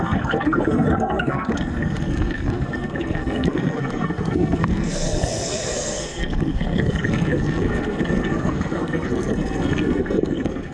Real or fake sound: fake